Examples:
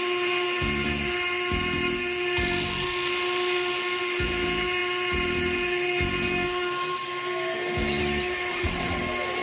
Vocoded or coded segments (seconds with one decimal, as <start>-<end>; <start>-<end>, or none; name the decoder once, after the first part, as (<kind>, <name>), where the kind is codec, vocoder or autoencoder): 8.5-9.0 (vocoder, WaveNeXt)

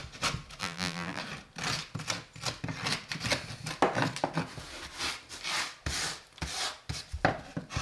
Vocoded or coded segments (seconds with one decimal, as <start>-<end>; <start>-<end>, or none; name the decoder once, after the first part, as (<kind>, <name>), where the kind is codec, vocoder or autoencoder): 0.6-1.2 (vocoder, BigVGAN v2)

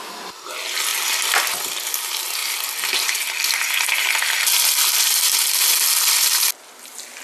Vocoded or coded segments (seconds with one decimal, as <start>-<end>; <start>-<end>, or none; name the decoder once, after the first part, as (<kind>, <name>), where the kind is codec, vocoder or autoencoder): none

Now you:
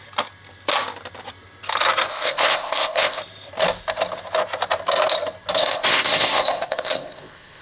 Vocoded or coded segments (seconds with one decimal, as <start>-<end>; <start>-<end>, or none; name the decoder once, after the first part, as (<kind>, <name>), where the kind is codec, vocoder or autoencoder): 2.1-3.2 (codec, ZipCodec); 5.6-7.6

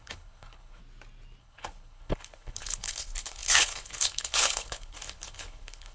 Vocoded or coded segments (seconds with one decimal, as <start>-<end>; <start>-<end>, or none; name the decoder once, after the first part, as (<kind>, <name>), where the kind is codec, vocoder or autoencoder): 0.0-0.8 (codec, HILCodec); 1.4-5.9